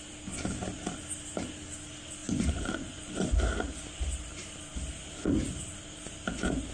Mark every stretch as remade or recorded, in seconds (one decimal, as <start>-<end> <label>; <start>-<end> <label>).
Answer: 0.0-2.2 recorded; 2.2-3.1 remade; 3.1-6.7 recorded